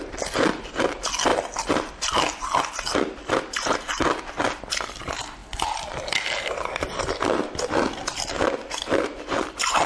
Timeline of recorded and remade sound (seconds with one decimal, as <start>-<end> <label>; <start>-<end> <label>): 0.0-9.9 recorded